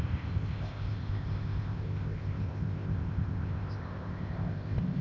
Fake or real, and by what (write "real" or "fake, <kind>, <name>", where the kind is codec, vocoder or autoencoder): fake, codec, ZipCodec